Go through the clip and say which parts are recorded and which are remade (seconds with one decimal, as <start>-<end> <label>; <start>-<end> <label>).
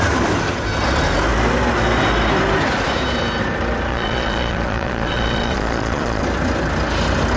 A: 0.0-3.9 recorded; 3.9-6.2 remade; 6.2-7.4 recorded